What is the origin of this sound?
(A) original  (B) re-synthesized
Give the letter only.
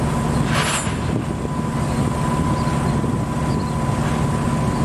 A